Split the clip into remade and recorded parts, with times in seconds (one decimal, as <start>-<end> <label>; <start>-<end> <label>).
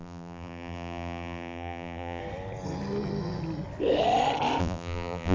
0.0-2.2 remade; 2.2-4.6 recorded; 4.6-5.3 remade